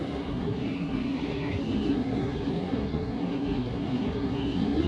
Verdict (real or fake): fake